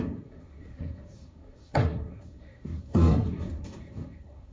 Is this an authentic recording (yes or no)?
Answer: no